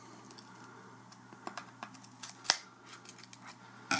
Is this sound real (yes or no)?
yes